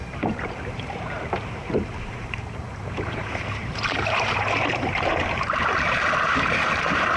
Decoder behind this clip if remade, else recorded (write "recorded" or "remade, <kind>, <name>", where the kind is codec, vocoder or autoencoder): remade, vocoder, BigVGAN v2